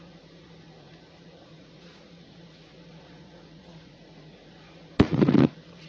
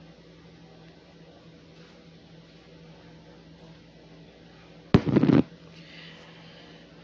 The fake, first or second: first